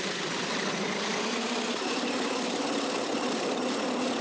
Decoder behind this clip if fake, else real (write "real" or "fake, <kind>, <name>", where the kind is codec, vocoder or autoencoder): real